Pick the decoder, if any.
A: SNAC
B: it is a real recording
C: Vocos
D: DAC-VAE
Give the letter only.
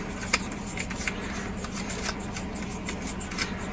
B